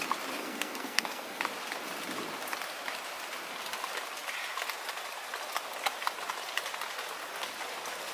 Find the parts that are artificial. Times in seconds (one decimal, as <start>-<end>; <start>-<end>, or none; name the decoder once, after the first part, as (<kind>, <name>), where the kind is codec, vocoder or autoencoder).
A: 0.4-1.4 (codec, SNAC)